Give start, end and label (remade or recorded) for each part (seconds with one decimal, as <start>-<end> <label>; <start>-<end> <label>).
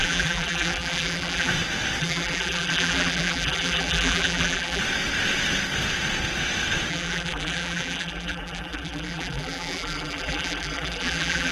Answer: 0.0-1.5 remade; 1.5-2.0 recorded; 2.0-4.8 remade; 4.8-6.9 recorded; 6.9-11.5 remade